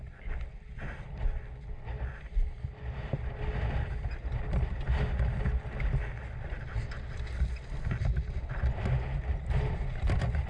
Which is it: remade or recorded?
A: recorded